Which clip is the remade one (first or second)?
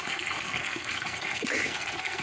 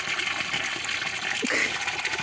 first